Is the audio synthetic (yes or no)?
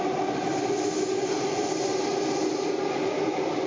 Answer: no